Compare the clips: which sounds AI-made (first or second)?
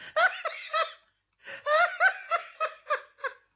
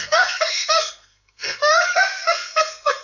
second